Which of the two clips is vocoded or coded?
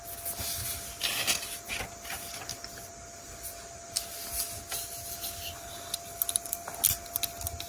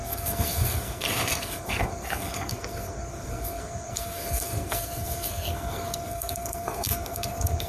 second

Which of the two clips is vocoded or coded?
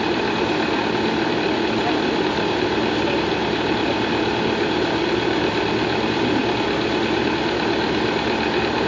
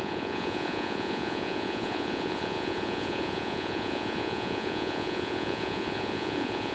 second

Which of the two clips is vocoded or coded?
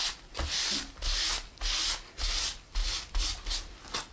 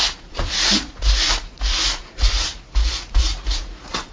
second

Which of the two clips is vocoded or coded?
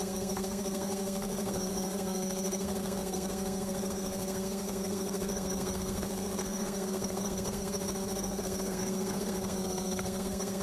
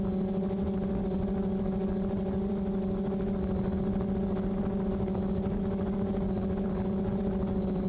first